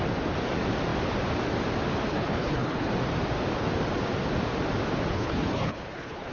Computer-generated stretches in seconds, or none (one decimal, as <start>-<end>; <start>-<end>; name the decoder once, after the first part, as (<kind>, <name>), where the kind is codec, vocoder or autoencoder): 2.1-2.9 (codec, HILCodec); 5.1-6.3